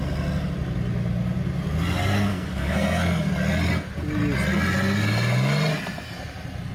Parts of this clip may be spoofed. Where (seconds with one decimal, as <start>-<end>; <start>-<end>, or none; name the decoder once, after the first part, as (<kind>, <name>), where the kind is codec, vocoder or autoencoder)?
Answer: 2.3-3.3 (codec, SNAC)